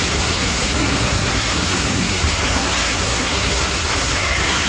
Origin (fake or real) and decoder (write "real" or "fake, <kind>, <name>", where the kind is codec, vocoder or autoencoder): fake, codec, SNAC